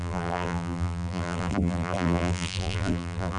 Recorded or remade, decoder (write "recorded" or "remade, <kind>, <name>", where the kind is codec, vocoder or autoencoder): remade, vocoder, BigVGAN v2